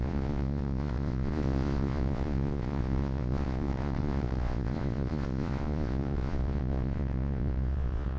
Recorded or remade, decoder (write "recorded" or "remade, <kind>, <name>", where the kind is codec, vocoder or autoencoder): remade, vocoder, Vocos